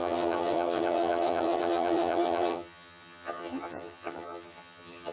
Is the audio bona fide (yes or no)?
no